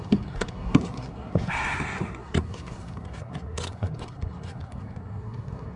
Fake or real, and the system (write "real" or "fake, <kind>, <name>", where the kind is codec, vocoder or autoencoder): fake, codec, SNAC